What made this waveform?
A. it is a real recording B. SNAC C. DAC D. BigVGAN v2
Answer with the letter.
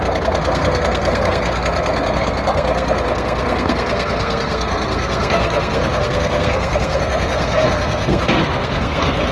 B